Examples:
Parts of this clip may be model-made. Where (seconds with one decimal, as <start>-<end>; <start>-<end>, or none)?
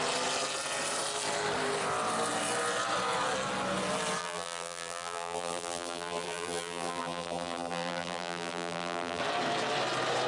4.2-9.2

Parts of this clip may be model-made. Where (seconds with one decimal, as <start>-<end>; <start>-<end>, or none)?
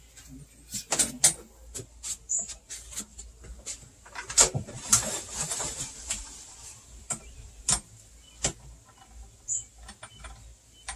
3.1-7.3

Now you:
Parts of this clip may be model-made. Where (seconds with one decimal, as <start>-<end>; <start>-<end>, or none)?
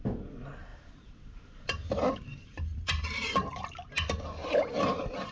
0.7-3.9; 4.4-5.3